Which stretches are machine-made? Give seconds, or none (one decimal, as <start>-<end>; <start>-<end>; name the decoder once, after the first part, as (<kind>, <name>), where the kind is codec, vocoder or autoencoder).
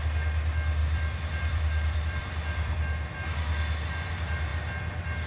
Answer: 0.8-3.1 (vocoder, BigVGAN v2)